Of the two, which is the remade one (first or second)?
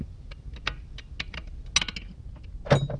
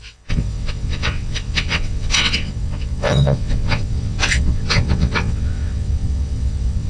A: second